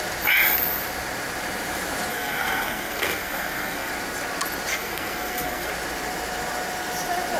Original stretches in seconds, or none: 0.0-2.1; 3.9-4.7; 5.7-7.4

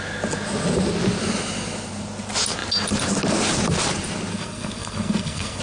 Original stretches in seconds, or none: 0.0-4.3

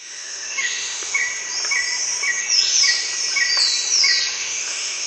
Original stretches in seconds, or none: 1.2-4.3

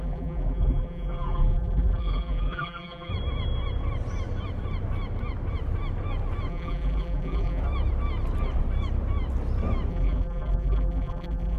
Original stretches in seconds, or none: 3.1-6.5; 7.6-9.9

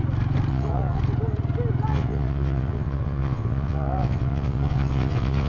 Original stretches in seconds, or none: 0.0-0.5; 1.0-1.9

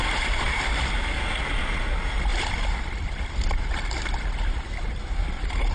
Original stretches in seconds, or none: 0.7-2.3; 4.6-5.7